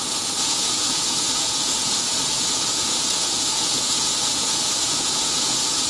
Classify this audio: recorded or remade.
remade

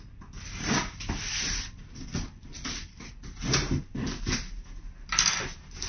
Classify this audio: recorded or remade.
recorded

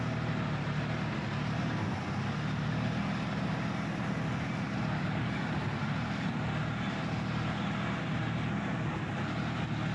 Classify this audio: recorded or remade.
recorded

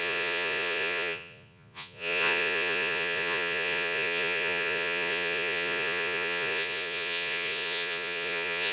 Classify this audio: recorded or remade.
remade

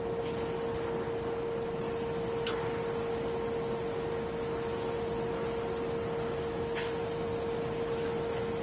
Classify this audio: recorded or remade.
recorded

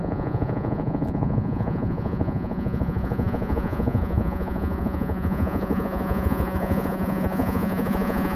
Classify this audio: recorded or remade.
remade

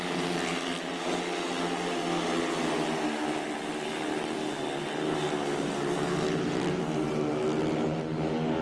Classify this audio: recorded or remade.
recorded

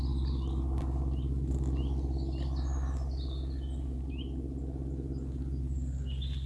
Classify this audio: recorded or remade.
recorded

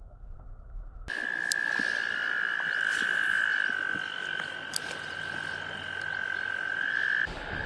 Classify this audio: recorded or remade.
recorded